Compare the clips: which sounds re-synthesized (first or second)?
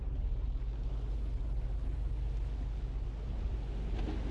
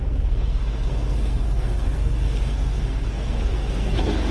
second